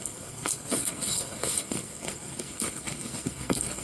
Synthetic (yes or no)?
yes